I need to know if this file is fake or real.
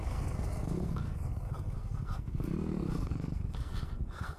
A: fake